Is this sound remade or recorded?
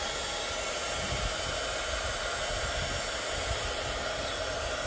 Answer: recorded